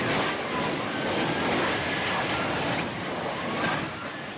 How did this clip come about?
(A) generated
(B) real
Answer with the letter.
B